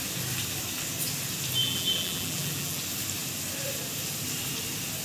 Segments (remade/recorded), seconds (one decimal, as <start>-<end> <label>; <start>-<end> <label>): 0.0-1.6 recorded; 1.6-2.8 remade; 2.8-5.0 recorded